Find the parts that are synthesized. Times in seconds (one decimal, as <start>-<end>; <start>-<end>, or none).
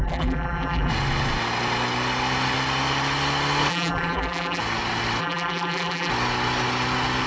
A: 0.0-0.9; 3.7-4.6; 5.2-6.1